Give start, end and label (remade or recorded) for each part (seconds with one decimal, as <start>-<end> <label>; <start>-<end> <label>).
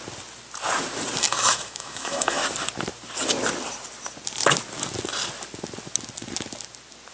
0.0-1.2 recorded; 1.2-2.4 remade; 2.4-7.1 recorded